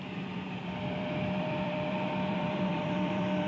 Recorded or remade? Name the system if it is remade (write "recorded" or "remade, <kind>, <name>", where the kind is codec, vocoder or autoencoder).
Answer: remade, vocoder, BigVGAN v2